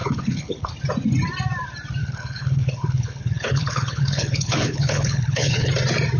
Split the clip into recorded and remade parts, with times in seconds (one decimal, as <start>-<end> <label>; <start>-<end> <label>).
0.0-0.7 remade; 0.7-2.0 recorded; 2.0-5.7 remade; 5.7-6.2 recorded